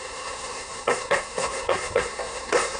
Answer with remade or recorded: remade